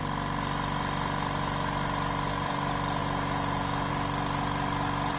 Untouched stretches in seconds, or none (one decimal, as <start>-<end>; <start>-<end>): 0.0-3.0; 3.9-5.2